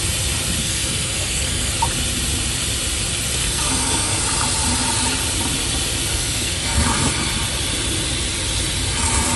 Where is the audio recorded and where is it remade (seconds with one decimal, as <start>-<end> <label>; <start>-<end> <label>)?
0.0-0.6 recorded; 0.6-1.7 remade; 1.7-3.4 recorded; 3.4-4.2 remade; 4.2-6.1 recorded; 6.1-6.8 remade; 6.8-9.4 recorded